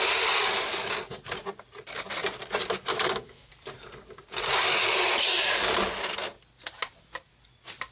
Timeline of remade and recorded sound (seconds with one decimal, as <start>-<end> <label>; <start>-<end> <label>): 0.0-2.9 recorded; 2.9-3.5 remade; 3.5-7.9 recorded